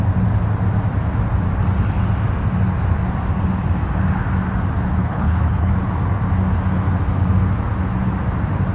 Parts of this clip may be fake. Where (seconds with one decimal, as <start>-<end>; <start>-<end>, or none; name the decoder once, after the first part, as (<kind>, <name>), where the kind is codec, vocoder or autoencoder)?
5.0-5.7 (codec, HILCodec)